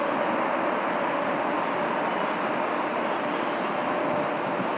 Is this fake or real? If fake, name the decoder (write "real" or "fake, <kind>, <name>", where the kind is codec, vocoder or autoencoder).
real